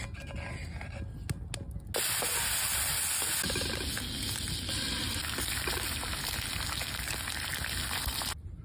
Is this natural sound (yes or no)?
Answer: yes